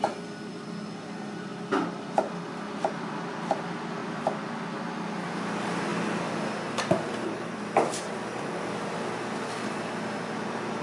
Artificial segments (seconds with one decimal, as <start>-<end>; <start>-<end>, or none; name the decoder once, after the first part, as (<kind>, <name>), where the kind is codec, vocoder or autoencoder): none